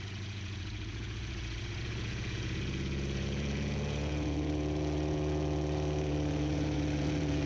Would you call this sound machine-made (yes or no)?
yes